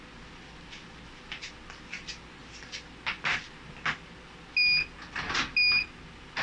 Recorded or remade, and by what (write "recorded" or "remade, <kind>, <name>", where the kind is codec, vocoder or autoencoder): recorded